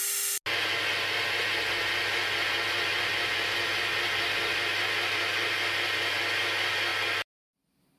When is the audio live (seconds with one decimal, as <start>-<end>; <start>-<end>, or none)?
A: 0.0-8.0